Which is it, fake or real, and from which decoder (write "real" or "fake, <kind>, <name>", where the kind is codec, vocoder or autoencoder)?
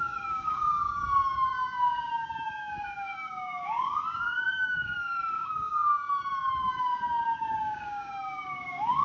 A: fake, codec, DAC